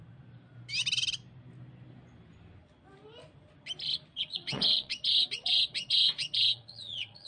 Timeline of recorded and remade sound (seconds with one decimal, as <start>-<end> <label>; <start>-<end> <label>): 0.0-4.1 recorded; 4.1-7.3 remade